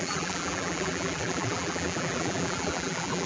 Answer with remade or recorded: remade